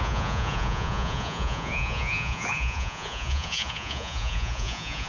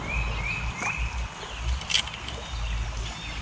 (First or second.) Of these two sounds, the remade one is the first